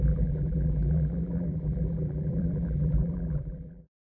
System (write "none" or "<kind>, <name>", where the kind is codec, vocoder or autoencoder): vocoder, BigVGAN v2